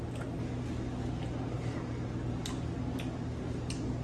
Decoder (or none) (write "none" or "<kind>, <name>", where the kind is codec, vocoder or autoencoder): none